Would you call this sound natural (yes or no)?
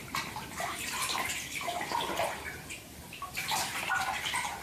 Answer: yes